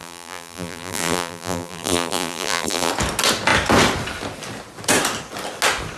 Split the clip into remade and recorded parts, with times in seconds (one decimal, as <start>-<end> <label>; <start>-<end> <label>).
0.0-2.9 remade; 2.9-6.0 recorded